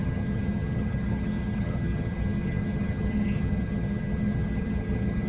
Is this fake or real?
fake